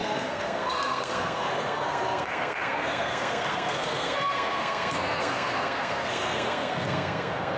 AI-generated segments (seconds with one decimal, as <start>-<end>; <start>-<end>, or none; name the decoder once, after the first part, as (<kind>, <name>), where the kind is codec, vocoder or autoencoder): 0.0-7.6 (codec, SNAC)

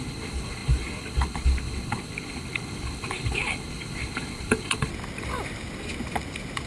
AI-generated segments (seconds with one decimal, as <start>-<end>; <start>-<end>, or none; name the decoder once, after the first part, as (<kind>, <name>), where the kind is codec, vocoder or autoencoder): 0.0-4.9 (codec, HILCodec)